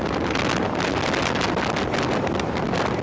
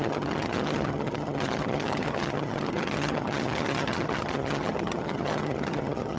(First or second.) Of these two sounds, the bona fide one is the first